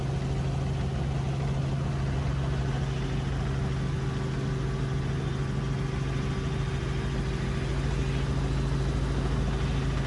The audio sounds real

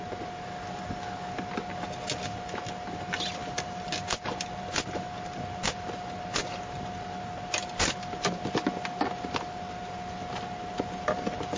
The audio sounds real